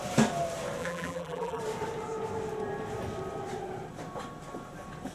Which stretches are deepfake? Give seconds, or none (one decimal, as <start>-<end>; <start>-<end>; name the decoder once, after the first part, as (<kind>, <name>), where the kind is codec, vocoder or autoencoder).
0.8-1.6 (vocoder, BigVGAN v2)